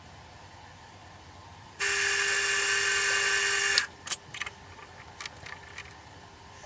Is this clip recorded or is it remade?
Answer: recorded